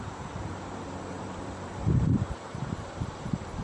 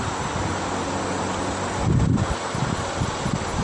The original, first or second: second